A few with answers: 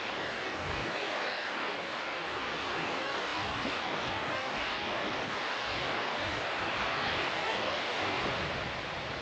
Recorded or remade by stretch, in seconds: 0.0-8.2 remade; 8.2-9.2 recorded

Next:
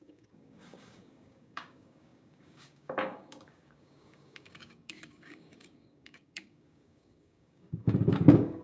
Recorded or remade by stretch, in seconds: 0.0-8.6 remade

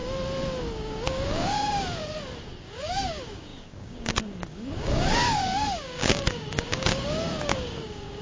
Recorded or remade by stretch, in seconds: 0.0-0.6 recorded; 0.6-2.0 remade; 2.0-2.6 recorded; 2.6-8.2 remade

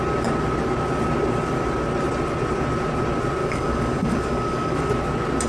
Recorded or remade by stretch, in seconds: 0.0-3.4 recorded; 3.4-4.9 remade; 4.9-5.5 recorded

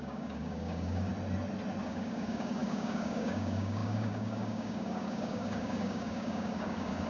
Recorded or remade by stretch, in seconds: 0.0-1.1 remade; 1.1-1.8 recorded; 1.8-7.1 remade

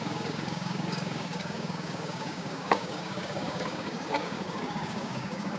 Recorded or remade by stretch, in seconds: 0.0-5.6 remade